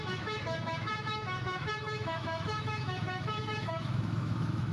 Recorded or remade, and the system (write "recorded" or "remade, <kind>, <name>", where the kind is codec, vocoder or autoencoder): remade, autoencoder, DAC-VAE